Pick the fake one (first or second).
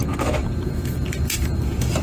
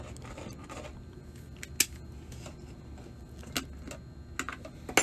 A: first